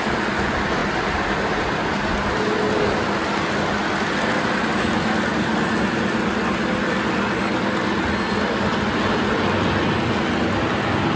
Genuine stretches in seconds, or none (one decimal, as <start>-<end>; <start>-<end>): 0.0-11.2